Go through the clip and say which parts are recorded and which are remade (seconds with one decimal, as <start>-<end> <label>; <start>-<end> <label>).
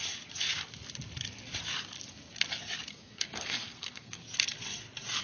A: 0.0-2.9 recorded; 2.9-4.2 remade; 4.2-5.2 recorded